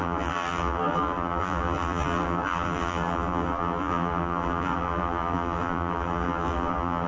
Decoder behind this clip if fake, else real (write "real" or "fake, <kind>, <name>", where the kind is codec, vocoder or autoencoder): fake, vocoder, BigVGAN v2